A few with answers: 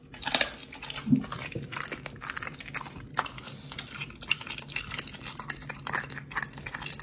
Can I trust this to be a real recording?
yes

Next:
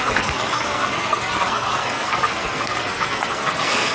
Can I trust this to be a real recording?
no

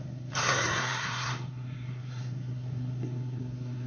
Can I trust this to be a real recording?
no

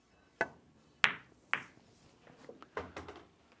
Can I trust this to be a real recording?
yes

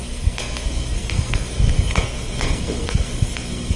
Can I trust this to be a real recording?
no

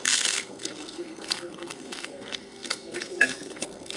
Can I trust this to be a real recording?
no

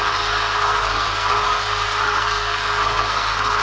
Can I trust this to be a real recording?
no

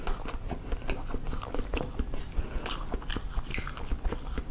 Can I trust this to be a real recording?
yes